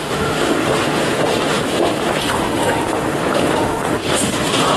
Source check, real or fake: fake